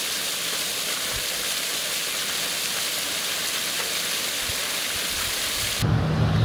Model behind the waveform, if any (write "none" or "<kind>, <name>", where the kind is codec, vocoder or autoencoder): none